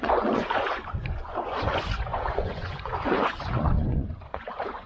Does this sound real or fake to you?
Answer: fake